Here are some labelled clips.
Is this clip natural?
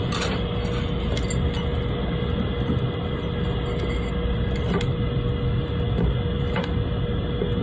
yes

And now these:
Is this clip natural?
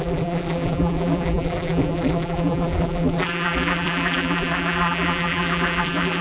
no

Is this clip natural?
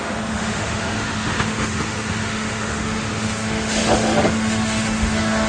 no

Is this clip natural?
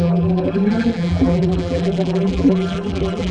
no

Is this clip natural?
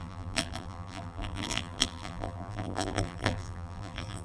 no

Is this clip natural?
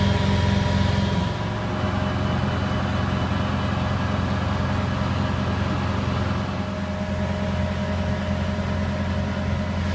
yes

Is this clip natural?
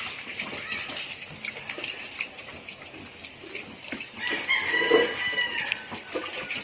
yes